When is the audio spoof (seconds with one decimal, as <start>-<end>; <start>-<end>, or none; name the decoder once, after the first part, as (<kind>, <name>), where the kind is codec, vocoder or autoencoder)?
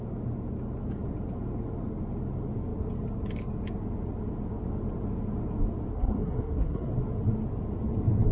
5.9-6.9 (codec, SNAC)